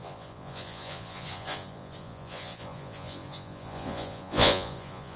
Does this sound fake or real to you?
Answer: fake